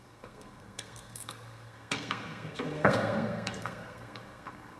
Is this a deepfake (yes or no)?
yes